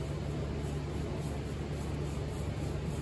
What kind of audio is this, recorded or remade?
recorded